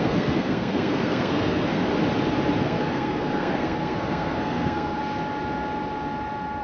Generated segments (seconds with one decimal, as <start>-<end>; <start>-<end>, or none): 0.0-1.9; 2.6-5.0